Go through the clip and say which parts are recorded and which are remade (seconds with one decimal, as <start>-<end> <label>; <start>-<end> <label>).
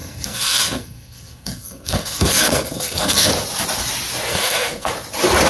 0.0-3.3 remade; 3.3-4.3 recorded; 4.3-4.9 remade; 4.9-5.5 recorded